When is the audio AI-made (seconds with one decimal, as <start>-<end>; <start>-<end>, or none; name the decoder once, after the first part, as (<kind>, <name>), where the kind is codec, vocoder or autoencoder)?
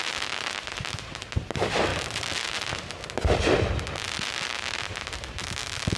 none